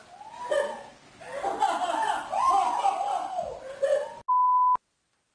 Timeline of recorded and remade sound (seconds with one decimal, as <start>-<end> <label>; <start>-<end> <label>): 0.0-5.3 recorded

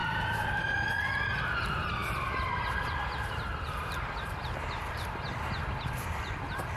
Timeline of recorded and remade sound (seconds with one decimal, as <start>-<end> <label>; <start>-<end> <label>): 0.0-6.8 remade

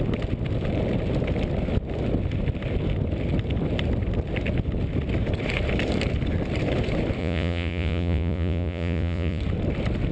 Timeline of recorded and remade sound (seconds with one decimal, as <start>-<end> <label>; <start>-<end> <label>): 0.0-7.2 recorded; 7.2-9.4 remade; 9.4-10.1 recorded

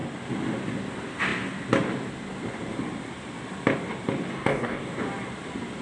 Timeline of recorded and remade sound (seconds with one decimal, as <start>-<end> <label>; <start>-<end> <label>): 0.0-4.3 recorded; 4.3-5.0 remade; 5.0-5.8 recorded

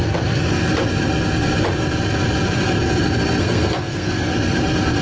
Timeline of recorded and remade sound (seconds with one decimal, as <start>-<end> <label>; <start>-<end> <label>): 0.0-3.4 recorded; 3.4-4.3 remade; 4.3-5.0 recorded